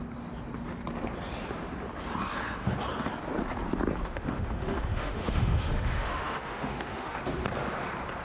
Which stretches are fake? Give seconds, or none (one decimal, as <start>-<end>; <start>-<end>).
4.0-7.2